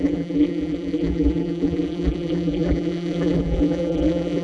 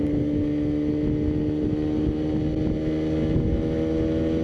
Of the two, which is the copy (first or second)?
first